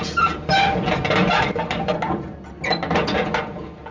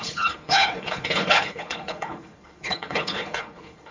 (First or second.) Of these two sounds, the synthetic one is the second